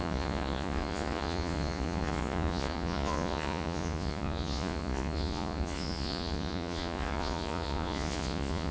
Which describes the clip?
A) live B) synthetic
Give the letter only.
B